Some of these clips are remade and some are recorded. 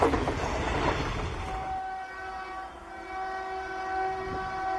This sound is recorded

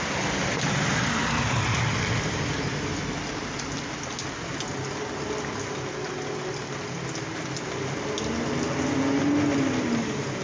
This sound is recorded